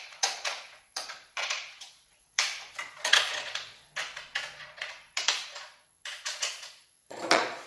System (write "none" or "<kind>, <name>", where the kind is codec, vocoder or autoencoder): vocoder, Vocos